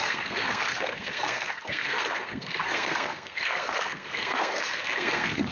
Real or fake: fake